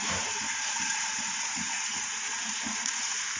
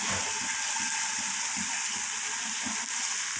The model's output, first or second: first